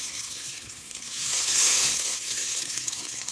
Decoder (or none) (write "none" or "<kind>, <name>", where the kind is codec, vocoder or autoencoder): codec, SNAC